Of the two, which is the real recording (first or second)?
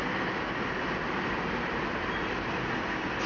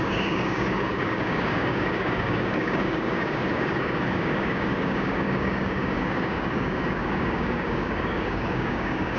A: first